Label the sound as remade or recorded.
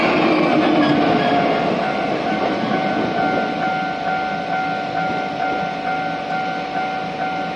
recorded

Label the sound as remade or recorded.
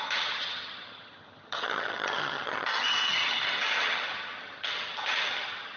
remade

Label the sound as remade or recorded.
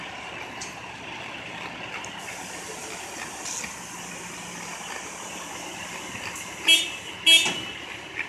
recorded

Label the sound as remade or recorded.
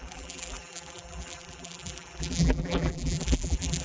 remade